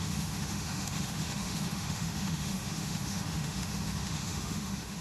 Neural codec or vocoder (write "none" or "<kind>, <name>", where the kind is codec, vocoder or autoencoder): autoencoder, DAC-VAE